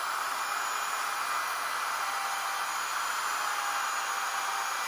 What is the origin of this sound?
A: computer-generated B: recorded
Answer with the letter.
B